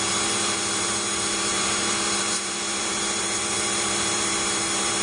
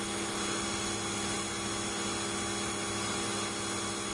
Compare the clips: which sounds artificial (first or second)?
first